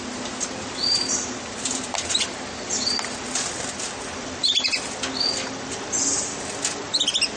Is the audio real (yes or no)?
yes